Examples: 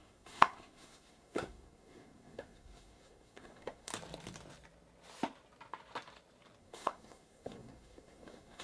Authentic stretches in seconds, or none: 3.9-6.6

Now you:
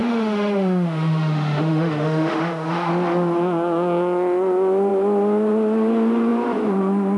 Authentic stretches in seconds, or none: 2.9-7.2

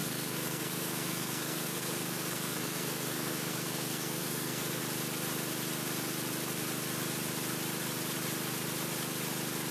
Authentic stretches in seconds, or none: 4.8-9.7

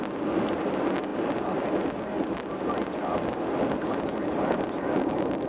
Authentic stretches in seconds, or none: 0.0-5.5

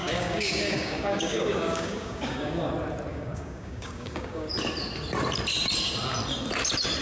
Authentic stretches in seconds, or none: 2.7-3.1; 4.5-7.0

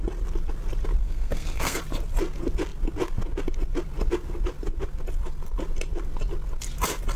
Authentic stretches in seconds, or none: 0.0-1.0; 1.8-7.2

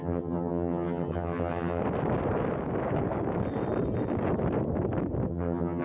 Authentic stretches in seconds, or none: 1.8-5.3